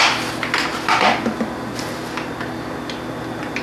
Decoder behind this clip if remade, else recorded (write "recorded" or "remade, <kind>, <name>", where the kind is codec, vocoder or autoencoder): recorded